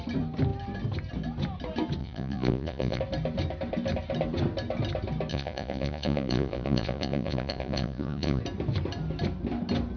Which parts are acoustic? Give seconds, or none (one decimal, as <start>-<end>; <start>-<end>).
0.0-2.0; 3.0-5.3; 8.4-10.0